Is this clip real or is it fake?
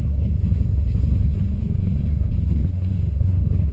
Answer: fake